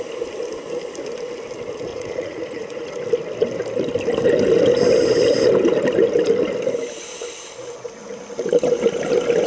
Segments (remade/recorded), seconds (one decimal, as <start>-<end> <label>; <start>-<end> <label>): 0.0-1.9 recorded; 1.9-2.9 remade; 2.9-9.5 recorded